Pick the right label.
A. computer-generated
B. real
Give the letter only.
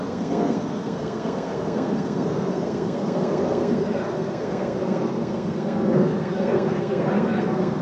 A